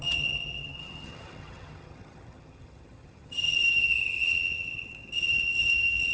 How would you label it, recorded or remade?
remade